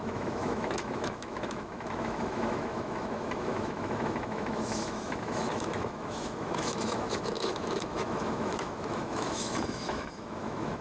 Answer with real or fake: fake